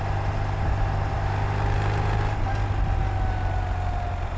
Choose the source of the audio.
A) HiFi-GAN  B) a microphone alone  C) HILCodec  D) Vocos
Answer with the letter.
B